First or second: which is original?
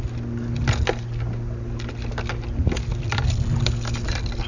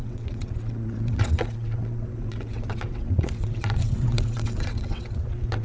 first